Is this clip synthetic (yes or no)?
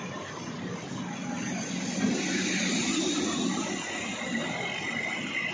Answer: no